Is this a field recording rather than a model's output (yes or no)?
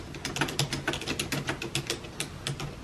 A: yes